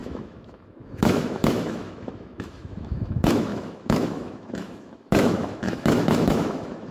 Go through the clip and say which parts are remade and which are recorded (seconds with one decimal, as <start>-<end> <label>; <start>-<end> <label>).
0.0-6.9 remade